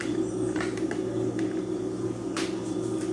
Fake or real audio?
real